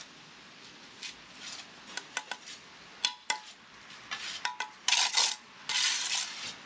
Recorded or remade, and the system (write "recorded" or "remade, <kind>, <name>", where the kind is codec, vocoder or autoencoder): recorded